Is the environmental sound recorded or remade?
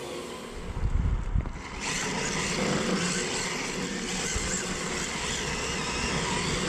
recorded